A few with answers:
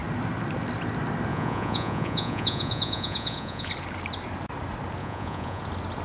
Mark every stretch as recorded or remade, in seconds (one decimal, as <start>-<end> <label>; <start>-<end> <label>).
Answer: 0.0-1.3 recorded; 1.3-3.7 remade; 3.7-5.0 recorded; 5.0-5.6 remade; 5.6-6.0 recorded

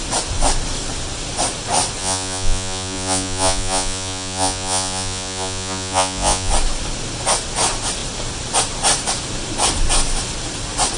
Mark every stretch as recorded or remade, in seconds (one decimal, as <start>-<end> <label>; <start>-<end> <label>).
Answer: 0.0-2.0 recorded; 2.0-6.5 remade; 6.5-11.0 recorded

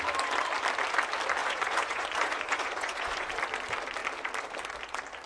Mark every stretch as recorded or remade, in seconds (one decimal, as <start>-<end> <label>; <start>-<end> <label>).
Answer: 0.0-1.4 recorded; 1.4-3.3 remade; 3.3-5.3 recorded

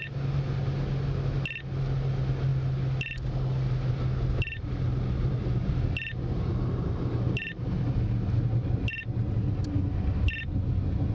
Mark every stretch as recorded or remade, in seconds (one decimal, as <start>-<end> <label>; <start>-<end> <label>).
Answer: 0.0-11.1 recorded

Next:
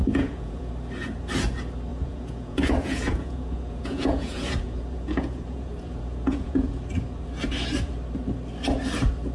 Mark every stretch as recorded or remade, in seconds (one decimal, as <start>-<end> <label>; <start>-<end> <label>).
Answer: 0.0-0.7 remade; 0.7-1.9 recorded; 1.9-6.8 remade; 6.8-9.3 recorded